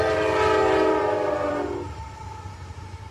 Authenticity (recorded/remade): remade